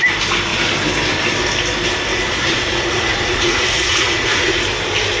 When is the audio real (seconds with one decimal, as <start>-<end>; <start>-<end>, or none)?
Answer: 0.0-2.1; 4.6-5.2

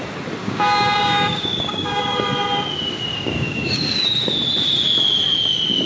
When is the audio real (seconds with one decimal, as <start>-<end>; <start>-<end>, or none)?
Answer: 0.0-0.4; 2.0-3.1; 4.1-5.9